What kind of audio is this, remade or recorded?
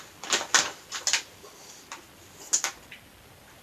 recorded